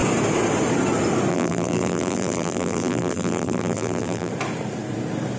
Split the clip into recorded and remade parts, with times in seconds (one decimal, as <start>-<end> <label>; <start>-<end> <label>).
0.0-1.3 recorded; 1.3-4.3 remade; 4.3-5.4 recorded